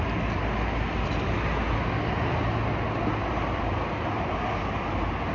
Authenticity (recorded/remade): recorded